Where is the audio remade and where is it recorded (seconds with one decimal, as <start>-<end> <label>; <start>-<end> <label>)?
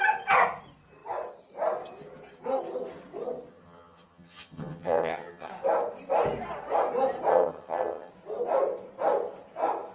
0.0-3.5 recorded; 3.5-5.5 remade; 5.5-7.3 recorded; 7.3-8.1 remade; 8.1-9.9 recorded